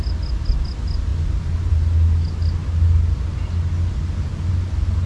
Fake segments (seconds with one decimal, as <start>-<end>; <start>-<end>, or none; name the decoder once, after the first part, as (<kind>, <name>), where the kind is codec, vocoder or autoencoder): none